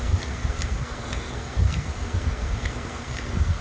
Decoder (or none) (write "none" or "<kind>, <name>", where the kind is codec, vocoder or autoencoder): codec, SNAC